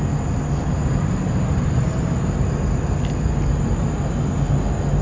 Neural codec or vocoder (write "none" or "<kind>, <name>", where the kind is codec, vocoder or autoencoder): none